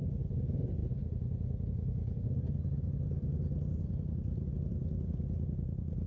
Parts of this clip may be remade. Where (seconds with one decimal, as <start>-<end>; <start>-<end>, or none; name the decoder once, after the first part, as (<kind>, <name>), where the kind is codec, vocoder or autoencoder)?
none